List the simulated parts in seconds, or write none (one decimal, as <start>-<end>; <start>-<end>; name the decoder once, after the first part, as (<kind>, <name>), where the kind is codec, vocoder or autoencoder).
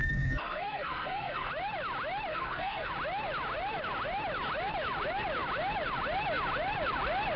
0.0-1.5 (codec, SNAC); 2.3-2.9